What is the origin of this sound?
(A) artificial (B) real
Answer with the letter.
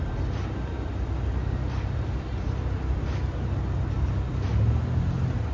B